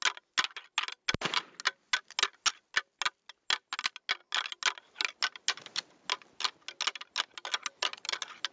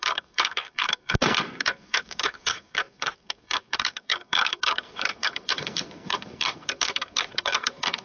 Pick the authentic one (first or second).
first